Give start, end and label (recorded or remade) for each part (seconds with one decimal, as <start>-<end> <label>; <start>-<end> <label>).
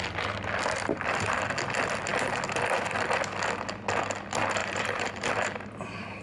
0.0-4.6 recorded; 4.6-6.2 remade